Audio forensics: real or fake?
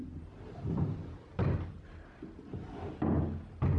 fake